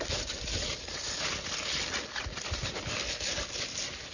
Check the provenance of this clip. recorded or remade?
recorded